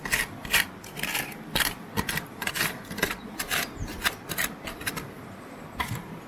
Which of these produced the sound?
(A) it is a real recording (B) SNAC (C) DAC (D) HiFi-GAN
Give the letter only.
A